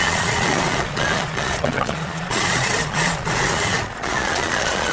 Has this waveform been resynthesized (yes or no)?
yes